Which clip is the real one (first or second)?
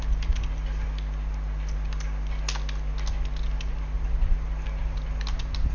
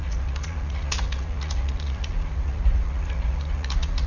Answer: first